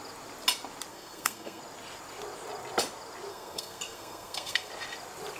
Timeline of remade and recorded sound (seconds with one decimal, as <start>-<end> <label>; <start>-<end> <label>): 0.0-0.9 recorded; 0.9-1.6 remade; 1.6-3.3 recorded; 3.3-4.7 remade; 4.7-5.4 recorded

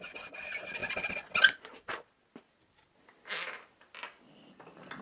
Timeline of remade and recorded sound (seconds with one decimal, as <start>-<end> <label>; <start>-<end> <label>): 0.0-5.0 recorded